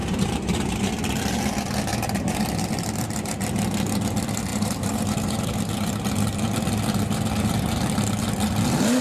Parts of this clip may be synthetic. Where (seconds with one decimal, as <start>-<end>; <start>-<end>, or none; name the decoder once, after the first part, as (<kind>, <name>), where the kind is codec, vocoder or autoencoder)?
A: 0.0-0.8 (vocoder, BigVGAN v2); 1.9-2.4; 4.5-5.7